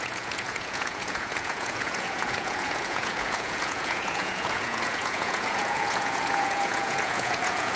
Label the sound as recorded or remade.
remade